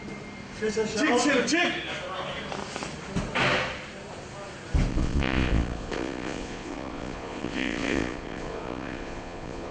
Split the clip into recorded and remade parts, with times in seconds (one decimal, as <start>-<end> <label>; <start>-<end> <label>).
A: 0.0-4.9 recorded; 4.9-9.7 remade